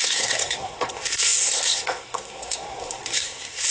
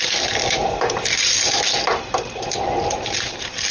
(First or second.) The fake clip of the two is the first